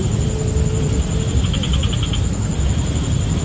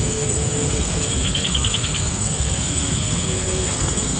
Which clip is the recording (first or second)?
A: first